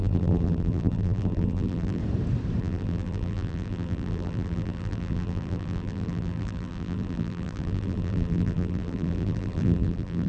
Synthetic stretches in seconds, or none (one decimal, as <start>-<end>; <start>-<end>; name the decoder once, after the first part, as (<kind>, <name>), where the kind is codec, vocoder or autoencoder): 0.0-2.0 (vocoder, BigVGAN v2); 2.6-10.3